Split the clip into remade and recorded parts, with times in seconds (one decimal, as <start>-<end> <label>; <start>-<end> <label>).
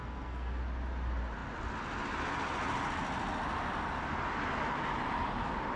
0.0-0.6 remade; 0.6-5.8 recorded